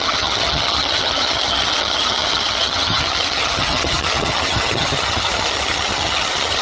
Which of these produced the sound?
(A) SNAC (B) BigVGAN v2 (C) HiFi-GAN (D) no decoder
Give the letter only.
C